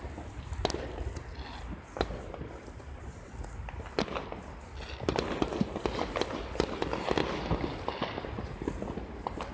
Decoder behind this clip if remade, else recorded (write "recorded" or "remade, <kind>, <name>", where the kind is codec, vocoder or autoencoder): recorded